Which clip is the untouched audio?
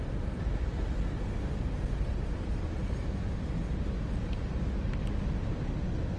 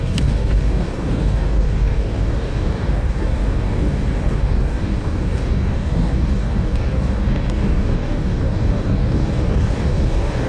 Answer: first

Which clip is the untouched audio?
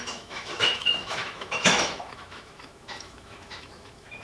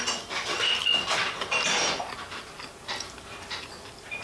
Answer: second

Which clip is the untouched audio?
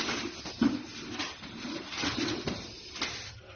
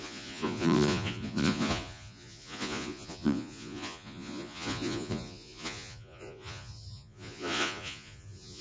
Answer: first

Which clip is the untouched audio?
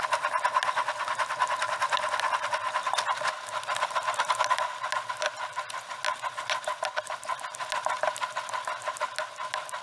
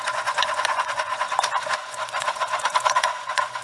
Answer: first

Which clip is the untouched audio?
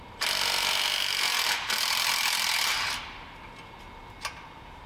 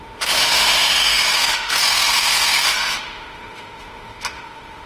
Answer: first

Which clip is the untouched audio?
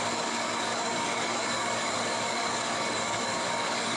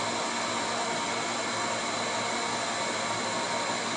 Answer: second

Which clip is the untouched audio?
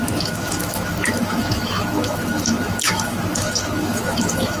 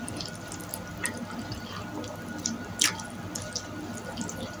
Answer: second